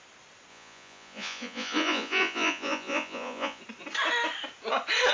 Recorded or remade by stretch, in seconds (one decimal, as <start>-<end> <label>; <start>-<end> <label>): 0.0-0.5 recorded; 0.5-3.6 remade; 3.6-5.1 recorded